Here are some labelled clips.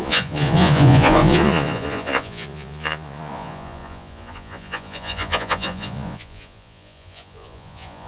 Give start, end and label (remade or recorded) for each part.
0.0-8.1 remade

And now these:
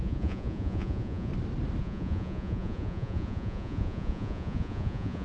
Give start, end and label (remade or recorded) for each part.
0.0-1.3 remade; 1.3-1.8 recorded; 1.8-5.2 remade

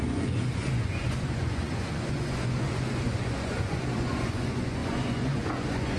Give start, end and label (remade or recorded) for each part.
0.0-6.0 remade

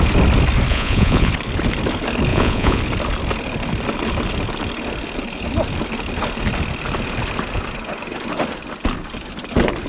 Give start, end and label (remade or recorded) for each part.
0.0-0.7 recorded; 0.7-1.3 remade; 1.3-2.3 recorded; 2.3-2.8 remade; 2.8-9.9 recorded

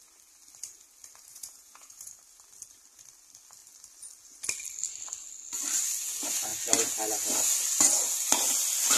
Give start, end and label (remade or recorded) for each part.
0.0-1.3 recorded; 1.3-2.1 remade; 2.1-9.0 recorded

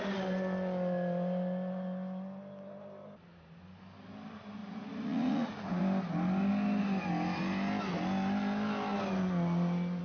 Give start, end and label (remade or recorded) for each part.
0.0-4.6 recorded; 4.6-5.8 remade; 5.8-10.0 recorded

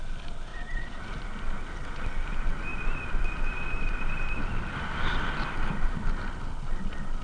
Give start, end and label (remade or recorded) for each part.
0.0-0.5 recorded; 0.5-1.0 remade; 1.0-7.2 recorded